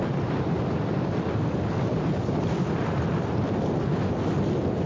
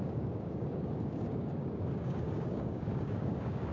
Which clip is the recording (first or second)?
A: first